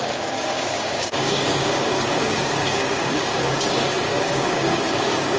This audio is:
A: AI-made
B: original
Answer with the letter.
A